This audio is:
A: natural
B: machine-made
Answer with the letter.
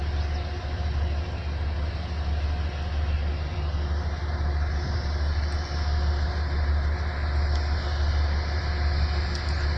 A